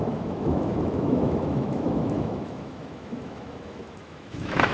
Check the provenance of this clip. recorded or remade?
remade